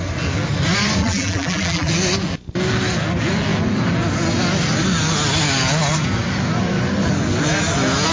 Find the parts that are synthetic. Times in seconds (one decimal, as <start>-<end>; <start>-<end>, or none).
1.0-1.9

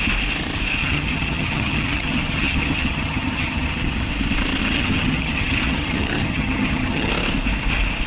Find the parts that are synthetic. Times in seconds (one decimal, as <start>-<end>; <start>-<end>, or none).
0.8-4.1; 4.6-7.1

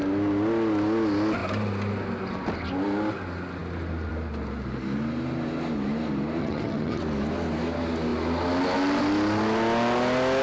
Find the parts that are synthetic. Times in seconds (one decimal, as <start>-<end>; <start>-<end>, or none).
6.4-7.0

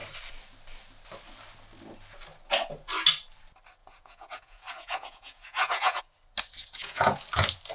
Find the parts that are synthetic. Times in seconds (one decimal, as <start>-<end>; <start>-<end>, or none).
3.8-6.0; 6.6-7.2

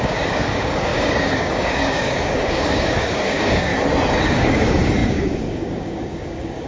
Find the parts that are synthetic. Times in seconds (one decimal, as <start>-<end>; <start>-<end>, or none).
0.0-3.7; 4.2-6.7

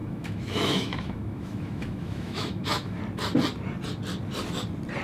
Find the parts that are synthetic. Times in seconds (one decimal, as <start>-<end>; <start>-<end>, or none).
0.0-3.0

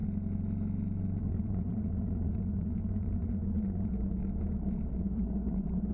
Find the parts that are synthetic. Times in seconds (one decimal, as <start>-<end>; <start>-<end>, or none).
1.2-4.2; 4.9-5.9

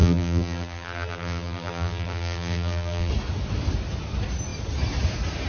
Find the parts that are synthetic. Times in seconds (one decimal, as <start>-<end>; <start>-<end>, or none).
0.0-3.1